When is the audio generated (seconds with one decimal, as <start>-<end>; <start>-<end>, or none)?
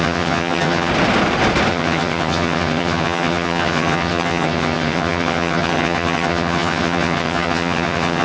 0.0-0.9; 1.7-8.2